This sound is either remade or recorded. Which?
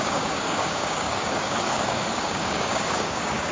remade